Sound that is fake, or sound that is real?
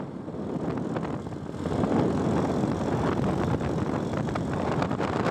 real